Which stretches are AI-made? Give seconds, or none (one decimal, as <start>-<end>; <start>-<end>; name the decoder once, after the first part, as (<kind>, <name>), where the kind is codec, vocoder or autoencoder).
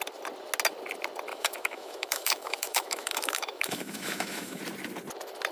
1.3-4.6 (autoencoder, DAC-VAE)